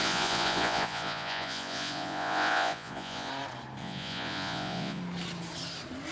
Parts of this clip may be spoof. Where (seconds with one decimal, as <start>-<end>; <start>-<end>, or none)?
0.0-3.3; 3.8-5.0